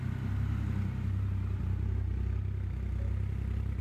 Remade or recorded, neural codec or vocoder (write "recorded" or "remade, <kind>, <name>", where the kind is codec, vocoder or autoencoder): recorded